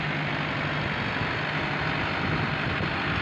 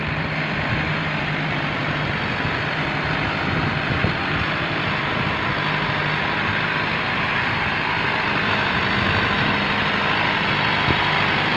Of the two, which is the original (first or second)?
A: first